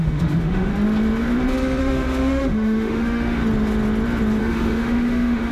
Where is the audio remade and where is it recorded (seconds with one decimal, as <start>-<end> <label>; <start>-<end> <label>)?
0.0-0.7 remade; 0.7-1.8 recorded; 1.8-3.4 remade; 3.4-4.4 recorded; 4.4-5.5 remade